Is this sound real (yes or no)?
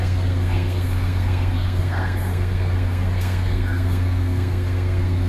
no